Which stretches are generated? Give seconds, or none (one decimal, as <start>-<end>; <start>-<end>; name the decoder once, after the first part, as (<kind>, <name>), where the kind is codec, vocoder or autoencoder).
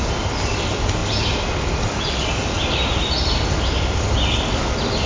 none